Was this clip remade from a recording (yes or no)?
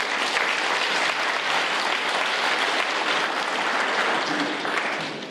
no